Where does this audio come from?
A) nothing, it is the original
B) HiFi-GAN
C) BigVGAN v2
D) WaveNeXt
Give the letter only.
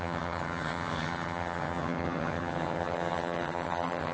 B